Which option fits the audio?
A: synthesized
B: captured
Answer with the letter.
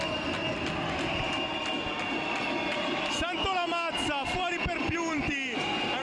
B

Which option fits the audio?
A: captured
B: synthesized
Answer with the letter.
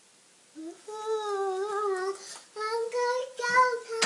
A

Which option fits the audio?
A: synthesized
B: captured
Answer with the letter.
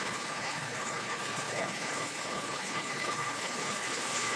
A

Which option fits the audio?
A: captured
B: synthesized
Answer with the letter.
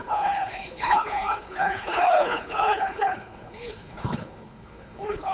B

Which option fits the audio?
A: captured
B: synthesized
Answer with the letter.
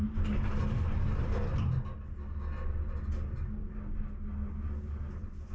A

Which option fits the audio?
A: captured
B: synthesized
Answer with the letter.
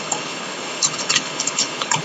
B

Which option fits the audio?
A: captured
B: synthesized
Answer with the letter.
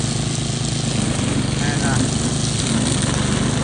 A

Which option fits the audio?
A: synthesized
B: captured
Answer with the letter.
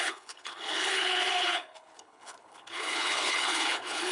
A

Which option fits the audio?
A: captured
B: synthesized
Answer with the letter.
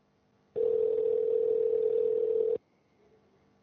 A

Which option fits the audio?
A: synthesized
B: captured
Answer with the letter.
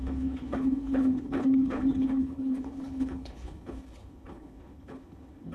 A